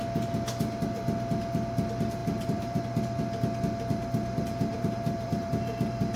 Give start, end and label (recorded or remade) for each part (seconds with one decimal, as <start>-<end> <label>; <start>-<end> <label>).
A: 0.0-2.2 recorded; 2.2-2.8 remade; 2.8-4.7 recorded; 4.7-5.5 remade; 5.5-6.2 recorded